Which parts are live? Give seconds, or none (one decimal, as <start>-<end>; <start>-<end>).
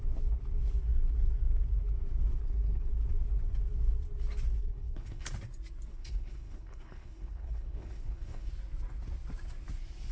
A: 0.0-2.4; 2.9-4.6; 5.3-5.9; 8.5-10.1